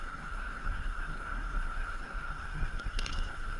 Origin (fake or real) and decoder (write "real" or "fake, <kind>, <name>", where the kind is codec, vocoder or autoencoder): fake, codec, SNAC